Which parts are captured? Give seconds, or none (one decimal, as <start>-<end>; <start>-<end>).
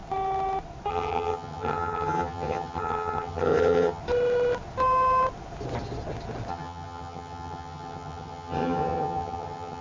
0.0-0.9; 4.0-6.5